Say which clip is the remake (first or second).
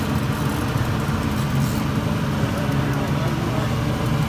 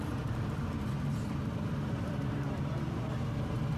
second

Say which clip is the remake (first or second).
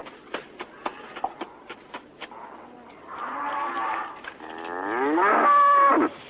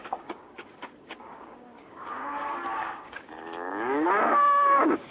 second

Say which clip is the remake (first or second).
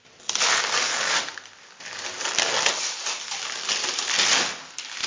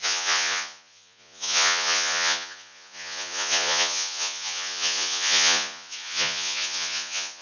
second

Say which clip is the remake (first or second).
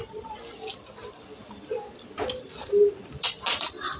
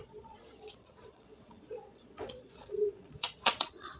second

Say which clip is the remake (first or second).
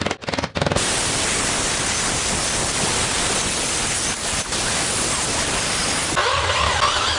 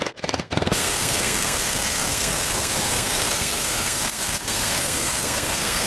second